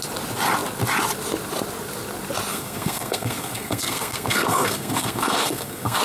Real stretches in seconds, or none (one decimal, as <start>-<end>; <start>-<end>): 0.0-2.5